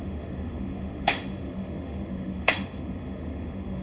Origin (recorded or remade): remade